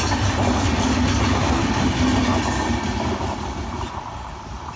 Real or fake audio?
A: real